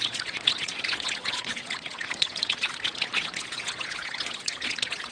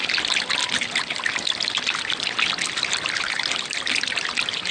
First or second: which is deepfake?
first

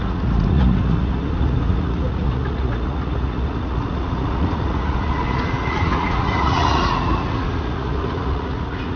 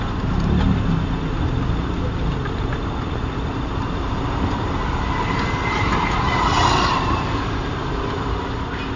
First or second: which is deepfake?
first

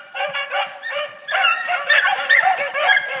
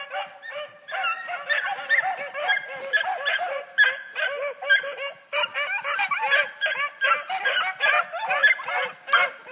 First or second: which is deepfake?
first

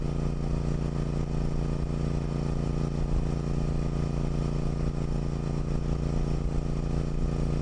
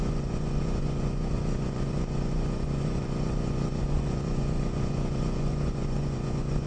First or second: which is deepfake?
second